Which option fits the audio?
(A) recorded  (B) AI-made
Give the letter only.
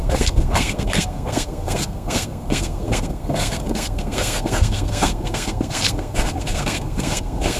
B